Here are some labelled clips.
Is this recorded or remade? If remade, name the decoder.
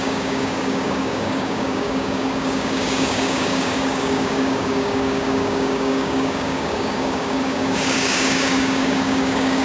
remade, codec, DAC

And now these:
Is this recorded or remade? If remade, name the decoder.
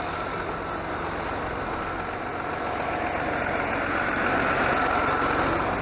recorded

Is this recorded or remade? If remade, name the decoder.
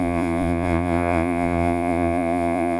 remade, vocoder, Vocos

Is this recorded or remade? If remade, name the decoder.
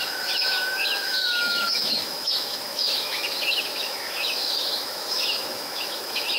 remade, autoencoder, DAC-VAE